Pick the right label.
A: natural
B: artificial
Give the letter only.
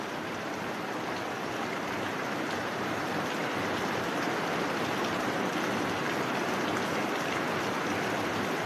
A